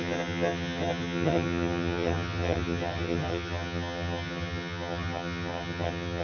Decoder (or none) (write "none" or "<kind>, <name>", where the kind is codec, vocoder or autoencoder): vocoder, HiFi-GAN